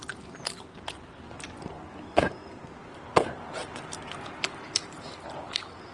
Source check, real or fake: real